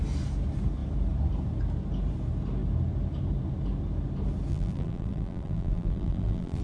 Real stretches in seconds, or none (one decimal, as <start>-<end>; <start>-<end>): 0.0-4.5